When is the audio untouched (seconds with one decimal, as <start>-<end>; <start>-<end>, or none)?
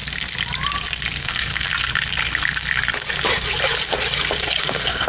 0.0-1.2; 1.7-4.6